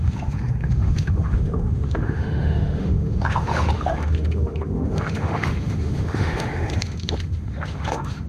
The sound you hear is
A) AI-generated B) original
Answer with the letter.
A